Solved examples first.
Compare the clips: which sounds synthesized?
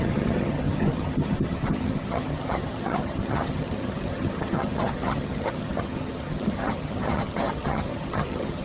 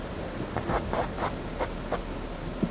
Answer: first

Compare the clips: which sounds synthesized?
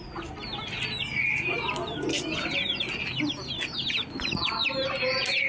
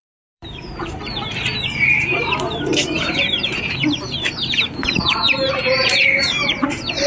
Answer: second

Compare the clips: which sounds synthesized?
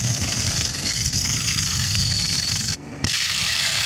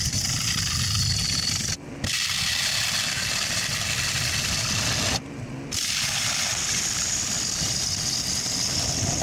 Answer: first